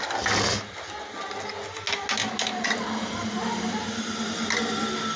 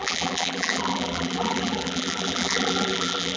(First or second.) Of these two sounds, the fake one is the second